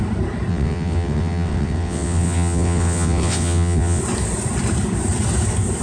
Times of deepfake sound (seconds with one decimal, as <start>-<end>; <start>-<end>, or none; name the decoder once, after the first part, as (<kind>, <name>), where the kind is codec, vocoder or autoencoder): 0.5-4.0 (vocoder, WaveNeXt)